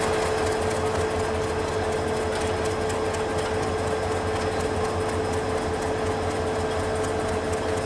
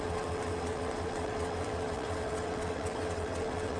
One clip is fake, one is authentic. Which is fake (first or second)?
second